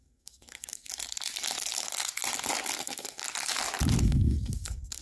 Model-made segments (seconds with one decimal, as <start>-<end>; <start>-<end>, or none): 0.0-0.9; 2.8-3.2; 4.0-5.0